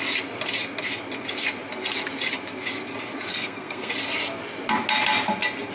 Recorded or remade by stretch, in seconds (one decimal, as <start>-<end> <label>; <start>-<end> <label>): 0.0-3.3 recorded; 3.3-3.9 remade; 3.9-5.7 recorded